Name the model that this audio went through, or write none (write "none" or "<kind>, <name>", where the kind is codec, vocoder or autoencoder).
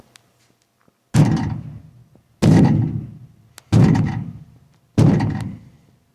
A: none